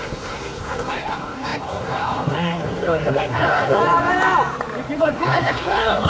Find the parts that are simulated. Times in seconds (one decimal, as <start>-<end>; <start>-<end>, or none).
0.0-3.8; 5.0-6.1